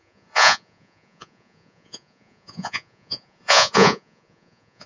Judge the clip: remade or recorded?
remade